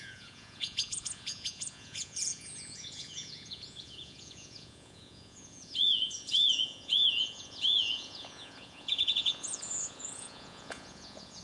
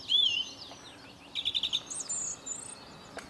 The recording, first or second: second